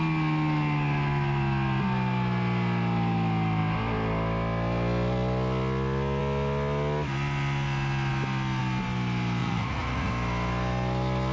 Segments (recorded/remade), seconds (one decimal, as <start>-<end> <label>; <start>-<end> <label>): 0.0-9.4 recorded; 9.4-10.1 remade; 10.1-11.3 recorded